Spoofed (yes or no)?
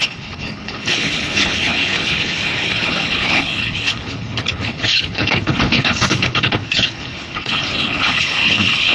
yes